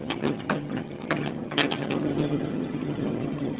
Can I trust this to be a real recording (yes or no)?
no